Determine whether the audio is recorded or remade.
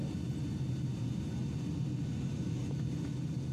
recorded